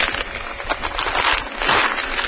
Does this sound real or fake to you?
real